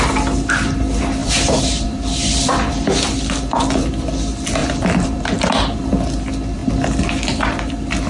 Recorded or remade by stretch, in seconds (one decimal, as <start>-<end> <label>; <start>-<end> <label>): 0.0-1.2 recorded; 1.2-3.2 remade; 3.2-4.6 recorded; 4.6-5.2 remade; 5.2-8.1 recorded